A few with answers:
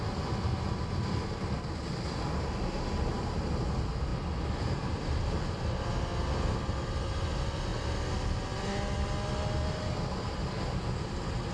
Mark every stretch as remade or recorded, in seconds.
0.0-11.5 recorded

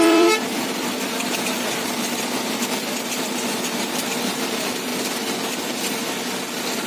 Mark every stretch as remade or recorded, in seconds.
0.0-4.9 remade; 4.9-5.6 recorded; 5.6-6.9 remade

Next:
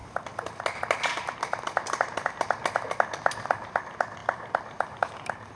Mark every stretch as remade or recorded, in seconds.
0.0-0.6 remade; 0.6-4.2 recorded; 4.2-5.0 remade; 5.0-5.6 recorded